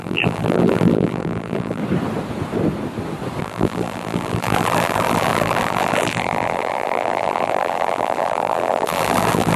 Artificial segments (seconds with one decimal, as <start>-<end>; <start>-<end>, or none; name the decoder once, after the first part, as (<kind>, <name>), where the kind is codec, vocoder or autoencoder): 0.0-1.8 (vocoder, BigVGAN v2); 3.4-9.6